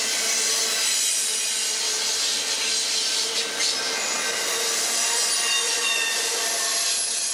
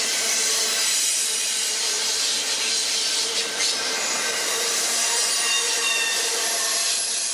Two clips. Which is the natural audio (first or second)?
first